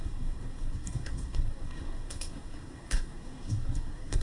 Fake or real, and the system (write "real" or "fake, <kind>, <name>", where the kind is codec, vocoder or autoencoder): fake, codec, SNAC